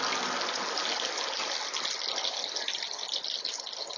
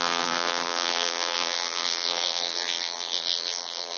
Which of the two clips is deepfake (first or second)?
second